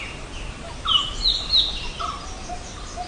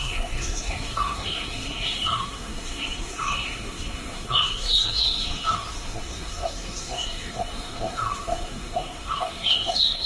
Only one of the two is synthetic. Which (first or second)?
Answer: second